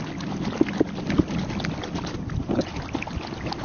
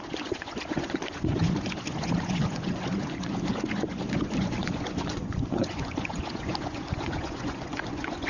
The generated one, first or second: second